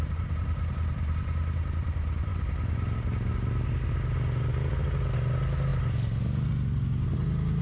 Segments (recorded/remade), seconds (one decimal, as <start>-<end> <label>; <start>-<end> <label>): 0.0-7.6 recorded